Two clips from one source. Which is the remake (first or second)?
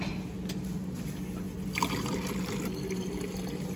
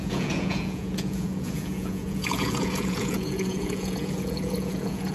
second